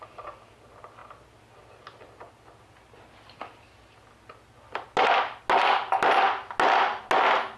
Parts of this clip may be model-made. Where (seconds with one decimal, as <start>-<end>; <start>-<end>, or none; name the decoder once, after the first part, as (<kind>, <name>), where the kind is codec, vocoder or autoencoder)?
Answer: none